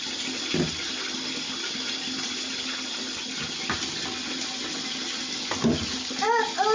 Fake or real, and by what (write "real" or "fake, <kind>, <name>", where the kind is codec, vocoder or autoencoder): real